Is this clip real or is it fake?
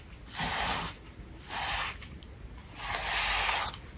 real